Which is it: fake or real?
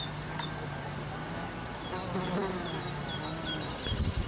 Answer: real